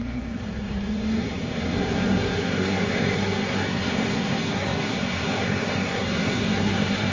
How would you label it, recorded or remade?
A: remade